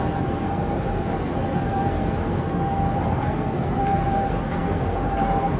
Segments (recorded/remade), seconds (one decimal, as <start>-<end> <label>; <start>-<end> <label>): 0.0-5.6 remade